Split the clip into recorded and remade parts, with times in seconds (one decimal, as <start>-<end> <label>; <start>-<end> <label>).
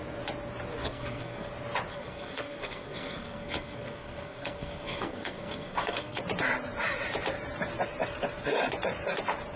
0.0-0.8 recorded; 0.8-1.5 remade; 1.5-1.9 recorded; 1.9-6.2 remade; 6.2-9.6 recorded